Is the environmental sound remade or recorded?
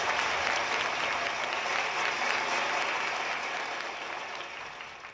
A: recorded